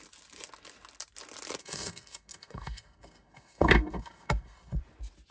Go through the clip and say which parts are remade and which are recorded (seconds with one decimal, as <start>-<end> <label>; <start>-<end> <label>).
0.0-1.6 recorded; 1.6-4.8 remade; 4.8-5.3 recorded